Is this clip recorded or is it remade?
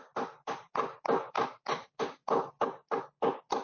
recorded